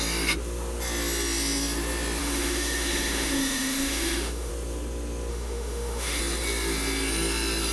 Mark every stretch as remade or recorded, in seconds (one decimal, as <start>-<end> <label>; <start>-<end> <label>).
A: 0.0-2.2 recorded; 2.2-4.5 remade; 4.5-5.3 recorded; 5.3-6.2 remade; 6.2-7.7 recorded